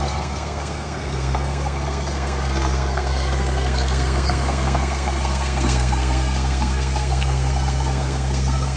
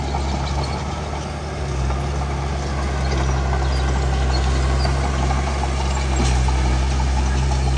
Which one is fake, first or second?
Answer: first